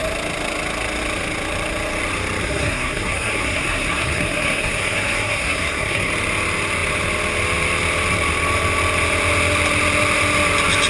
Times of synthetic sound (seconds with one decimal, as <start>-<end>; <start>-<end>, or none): 2.4-6.1